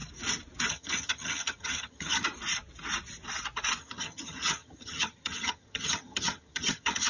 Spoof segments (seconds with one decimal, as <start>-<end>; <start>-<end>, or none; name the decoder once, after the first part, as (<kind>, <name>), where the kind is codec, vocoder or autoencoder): 0.7-2.2 (vocoder, HiFi-GAN); 3.8-7.1

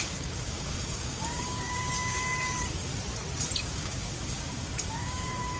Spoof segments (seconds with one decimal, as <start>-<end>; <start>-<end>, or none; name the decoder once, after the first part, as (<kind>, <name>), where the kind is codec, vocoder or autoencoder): 0.0-2.9 (codec, DAC); 3.6-5.6